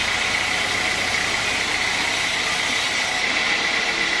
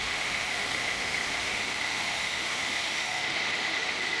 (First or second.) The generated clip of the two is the second